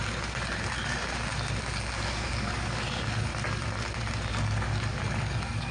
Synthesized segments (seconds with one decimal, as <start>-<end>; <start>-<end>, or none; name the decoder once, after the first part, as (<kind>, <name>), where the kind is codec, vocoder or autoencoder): 1.6-3.3 (codec, DAC); 4.3-5.7